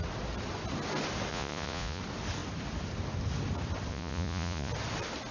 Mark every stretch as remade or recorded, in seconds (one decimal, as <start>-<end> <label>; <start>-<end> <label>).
0.0-1.3 recorded; 1.3-2.0 remade; 2.0-3.9 recorded; 3.9-4.7 remade; 4.7-5.3 recorded